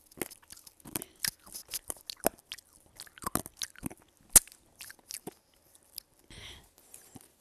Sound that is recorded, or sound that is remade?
recorded